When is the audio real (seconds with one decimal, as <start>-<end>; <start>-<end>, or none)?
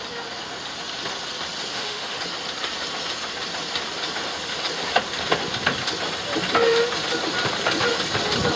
0.0-1.7; 2.2-8.6